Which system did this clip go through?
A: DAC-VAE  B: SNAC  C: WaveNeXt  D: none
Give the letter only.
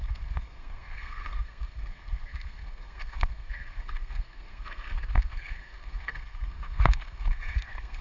B